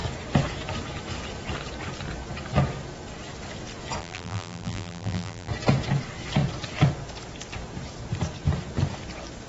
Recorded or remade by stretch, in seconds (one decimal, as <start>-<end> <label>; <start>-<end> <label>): 0.0-4.0 recorded; 4.0-5.5 remade; 5.5-9.5 recorded